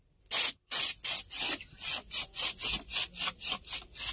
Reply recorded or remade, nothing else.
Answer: recorded